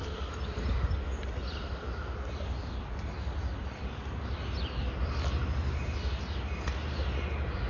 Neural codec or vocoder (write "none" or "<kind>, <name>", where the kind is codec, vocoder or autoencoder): none